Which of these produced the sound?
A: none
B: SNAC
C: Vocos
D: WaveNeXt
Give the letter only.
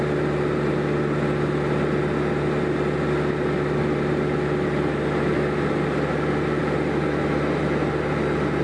A